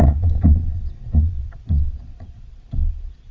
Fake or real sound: fake